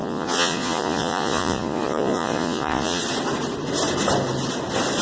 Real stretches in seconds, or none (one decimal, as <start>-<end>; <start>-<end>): 3.0-5.0